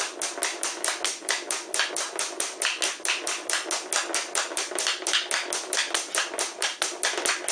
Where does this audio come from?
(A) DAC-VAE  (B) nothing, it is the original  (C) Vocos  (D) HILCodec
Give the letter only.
B